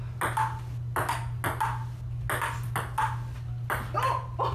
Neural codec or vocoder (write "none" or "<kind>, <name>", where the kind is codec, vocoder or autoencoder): none